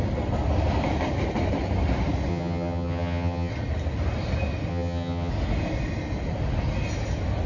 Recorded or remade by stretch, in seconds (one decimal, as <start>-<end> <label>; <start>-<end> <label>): 0.0-2.3 recorded; 2.3-3.5 remade; 3.5-4.7 recorded; 4.7-5.3 remade; 5.3-7.5 recorded